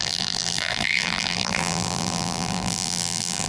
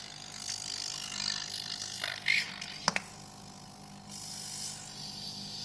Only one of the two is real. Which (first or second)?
second